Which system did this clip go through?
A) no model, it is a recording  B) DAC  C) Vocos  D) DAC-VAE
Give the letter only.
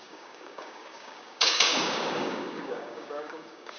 B